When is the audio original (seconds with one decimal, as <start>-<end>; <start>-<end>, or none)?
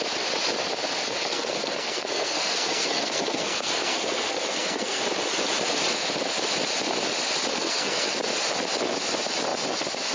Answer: 0.0-1.0; 5.0-7.5; 8.2-10.1